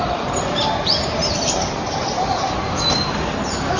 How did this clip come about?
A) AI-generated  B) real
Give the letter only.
B